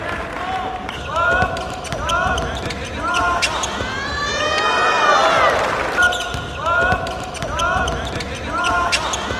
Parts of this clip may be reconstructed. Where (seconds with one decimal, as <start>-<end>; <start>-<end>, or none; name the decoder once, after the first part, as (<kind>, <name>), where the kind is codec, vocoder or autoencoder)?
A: none